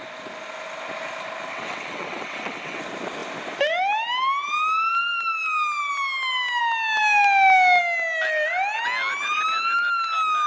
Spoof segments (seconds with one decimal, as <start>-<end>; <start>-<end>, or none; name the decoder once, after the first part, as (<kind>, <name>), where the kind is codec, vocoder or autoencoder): 1.5-2.8 (vocoder, WaveNeXt)

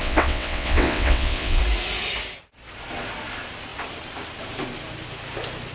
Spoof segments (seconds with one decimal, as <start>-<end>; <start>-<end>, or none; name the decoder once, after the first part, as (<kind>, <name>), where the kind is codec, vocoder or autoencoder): 0.0-1.6 (vocoder, WaveNeXt)

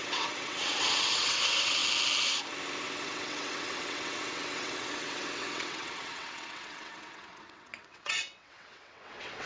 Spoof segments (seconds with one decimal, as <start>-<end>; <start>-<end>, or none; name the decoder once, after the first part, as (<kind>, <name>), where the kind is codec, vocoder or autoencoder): 0.0-1.8 (vocoder, WaveNeXt); 2.8-9.5

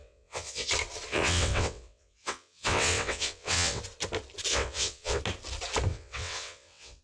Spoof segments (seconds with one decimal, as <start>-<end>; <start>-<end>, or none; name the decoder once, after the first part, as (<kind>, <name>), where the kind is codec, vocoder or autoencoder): 0.0-0.7 (vocoder, WaveNeXt); 1.1-3.8; 4.5-5.2; 5.9-7.0

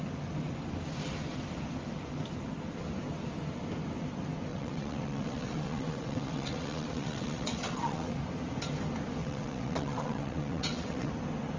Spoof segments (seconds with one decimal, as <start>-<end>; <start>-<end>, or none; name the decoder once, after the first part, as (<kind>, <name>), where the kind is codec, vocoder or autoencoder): 4.5-8.2 (vocoder, WaveNeXt); 9.2-11.1

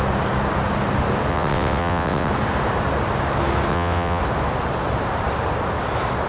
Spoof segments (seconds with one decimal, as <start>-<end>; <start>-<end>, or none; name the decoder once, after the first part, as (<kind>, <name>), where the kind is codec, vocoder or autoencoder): 1.3-2.3 (vocoder, WaveNeXt); 3.7-4.2